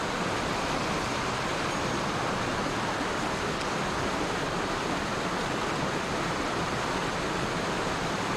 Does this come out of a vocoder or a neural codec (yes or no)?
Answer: no